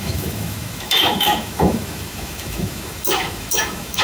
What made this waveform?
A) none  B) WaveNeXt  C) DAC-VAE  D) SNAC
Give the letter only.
C